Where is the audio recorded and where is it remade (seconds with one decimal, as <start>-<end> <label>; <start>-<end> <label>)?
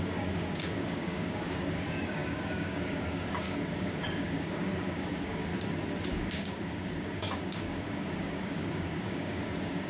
0.0-5.5 remade; 5.5-6.1 recorded; 6.1-9.9 remade